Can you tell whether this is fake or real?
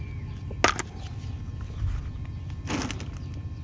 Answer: real